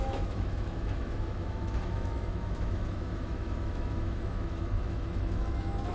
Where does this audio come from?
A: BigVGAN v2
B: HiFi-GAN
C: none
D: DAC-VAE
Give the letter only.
D